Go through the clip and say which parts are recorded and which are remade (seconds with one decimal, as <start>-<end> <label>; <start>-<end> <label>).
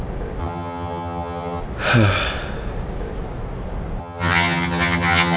0.0-0.4 recorded; 0.4-1.6 remade; 1.6-4.0 recorded; 4.0-5.4 remade